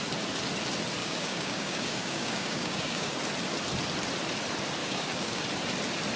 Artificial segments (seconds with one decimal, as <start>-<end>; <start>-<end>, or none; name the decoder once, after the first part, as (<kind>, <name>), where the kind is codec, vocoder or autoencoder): 1.0-3.2 (codec, DAC); 4.8-5.4